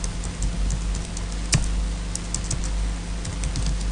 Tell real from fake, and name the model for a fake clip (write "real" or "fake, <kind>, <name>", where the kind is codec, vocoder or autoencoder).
real